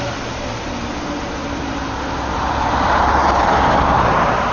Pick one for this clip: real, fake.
fake